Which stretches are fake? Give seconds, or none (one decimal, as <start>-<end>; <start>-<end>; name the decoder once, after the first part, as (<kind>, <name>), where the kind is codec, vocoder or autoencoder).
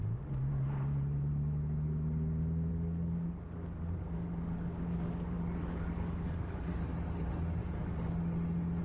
2.7-6.8 (codec, DAC); 7.6-8.1